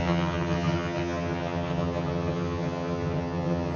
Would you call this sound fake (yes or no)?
yes